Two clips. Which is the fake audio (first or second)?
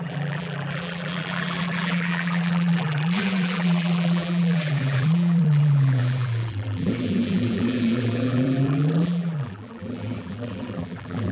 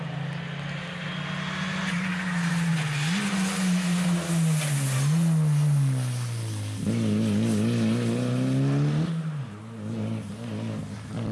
first